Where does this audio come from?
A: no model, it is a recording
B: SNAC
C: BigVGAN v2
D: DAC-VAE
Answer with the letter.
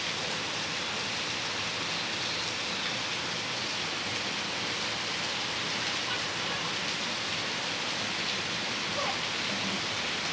A